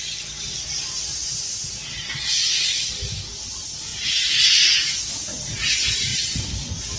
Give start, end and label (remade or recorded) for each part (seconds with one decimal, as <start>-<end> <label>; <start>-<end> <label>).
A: 0.0-3.9 remade; 3.9-5.6 recorded; 5.6-7.0 remade